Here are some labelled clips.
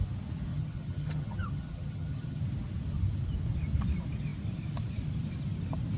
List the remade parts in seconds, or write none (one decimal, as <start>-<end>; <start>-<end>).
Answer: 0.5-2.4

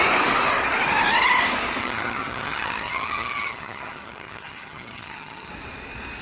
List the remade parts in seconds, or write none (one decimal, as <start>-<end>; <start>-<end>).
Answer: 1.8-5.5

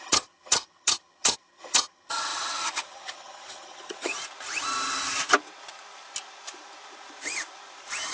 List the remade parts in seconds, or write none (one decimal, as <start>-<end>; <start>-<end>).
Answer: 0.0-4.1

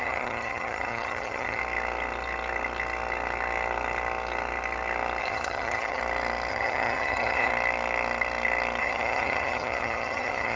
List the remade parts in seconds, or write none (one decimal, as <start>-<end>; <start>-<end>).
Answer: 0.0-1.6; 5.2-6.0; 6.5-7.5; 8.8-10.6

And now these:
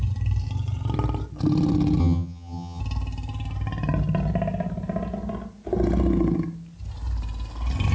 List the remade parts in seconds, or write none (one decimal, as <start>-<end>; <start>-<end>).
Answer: 2.0-2.8

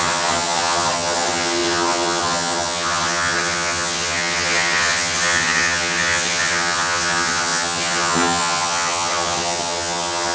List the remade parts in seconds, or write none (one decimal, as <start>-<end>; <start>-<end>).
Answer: 0.0-10.3